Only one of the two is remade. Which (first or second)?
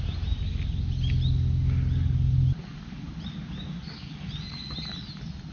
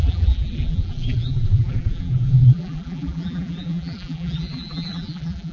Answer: second